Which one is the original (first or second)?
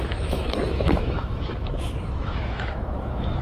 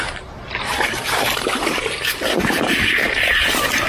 second